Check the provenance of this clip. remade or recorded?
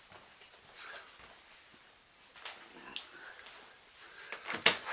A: recorded